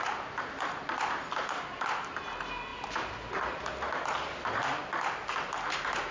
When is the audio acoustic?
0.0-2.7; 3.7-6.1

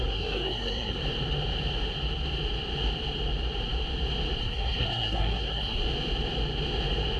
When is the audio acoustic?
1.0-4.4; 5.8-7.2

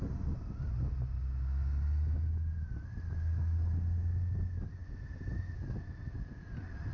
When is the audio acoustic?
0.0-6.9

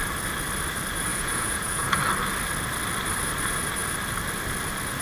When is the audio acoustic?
0.0-1.1; 2.0-5.0

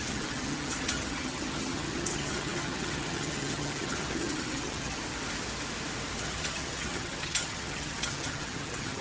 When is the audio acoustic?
5.0-6.2

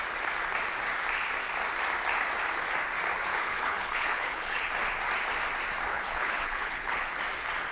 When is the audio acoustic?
0.0-3.3; 4.7-5.9; 7.1-7.7

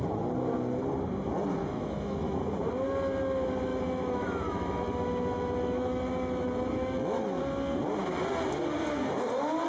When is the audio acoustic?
0.0-1.6; 2.4-3.7; 7.4-9.7